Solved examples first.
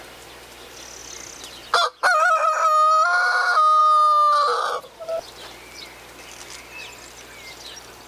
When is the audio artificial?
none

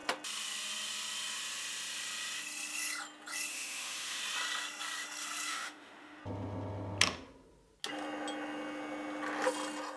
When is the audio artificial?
3.5-4.2 (autoencoder, DAC-VAE); 5.5-6.2

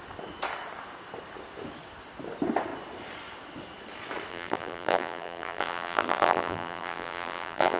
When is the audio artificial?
4.3-7.8 (vocoder, BigVGAN v2)

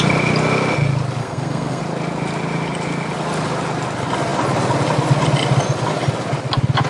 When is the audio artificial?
1.2-1.8 (codec, SNAC)

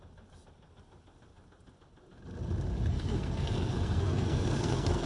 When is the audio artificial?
2.9-5.1 (codec, SNAC)

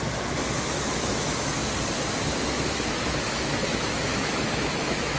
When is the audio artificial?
0.0-1.6 (autoencoder, DAC-VAE); 2.5-5.2

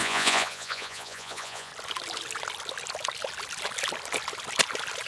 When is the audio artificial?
0.0-1.7 (vocoder, Vocos)

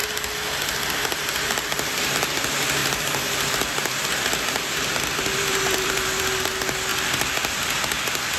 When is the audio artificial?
2.8-6.4 (vocoder, BigVGAN v2); 6.9-7.8